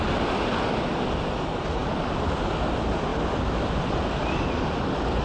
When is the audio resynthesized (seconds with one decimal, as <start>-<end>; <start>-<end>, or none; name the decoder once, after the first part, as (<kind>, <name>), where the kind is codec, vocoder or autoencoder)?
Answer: none